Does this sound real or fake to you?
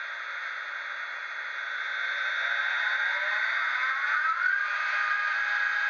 real